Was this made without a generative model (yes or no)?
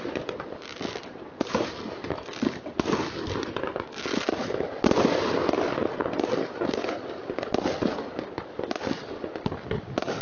no